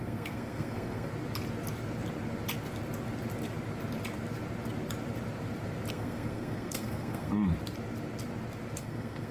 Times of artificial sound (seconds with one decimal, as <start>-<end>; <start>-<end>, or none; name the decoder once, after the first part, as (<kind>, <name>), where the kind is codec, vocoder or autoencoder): 0.0-1.1 (codec, SNAC); 5.9-7.3; 8.8-9.3